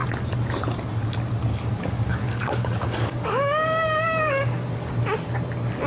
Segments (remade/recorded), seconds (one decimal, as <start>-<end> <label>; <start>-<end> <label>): 0.0-1.5 recorded; 1.5-4.9 remade; 4.9-5.9 recorded